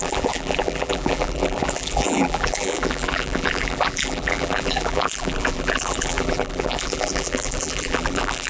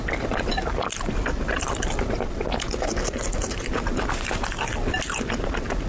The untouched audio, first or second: second